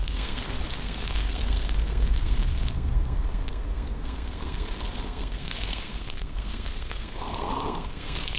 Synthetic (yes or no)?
yes